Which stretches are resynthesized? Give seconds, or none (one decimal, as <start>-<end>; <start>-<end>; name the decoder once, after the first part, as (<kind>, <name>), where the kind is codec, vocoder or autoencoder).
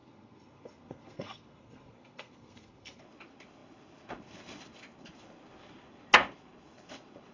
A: 0.0-3.0 (codec, SNAC)